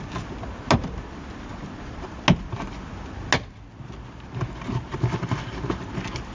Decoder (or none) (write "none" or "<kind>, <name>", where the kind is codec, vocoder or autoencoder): none